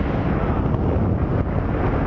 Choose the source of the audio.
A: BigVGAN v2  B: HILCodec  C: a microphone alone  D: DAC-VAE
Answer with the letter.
C